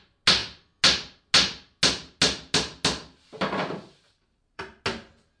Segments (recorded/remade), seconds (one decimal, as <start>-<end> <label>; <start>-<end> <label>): 0.0-3.6 recorded; 3.6-4.8 remade; 4.8-5.4 recorded